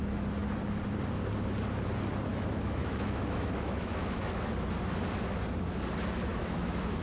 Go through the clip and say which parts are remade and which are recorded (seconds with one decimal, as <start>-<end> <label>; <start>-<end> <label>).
0.0-2.3 recorded; 2.3-4.5 remade; 4.5-6.3 recorded; 6.3-7.0 remade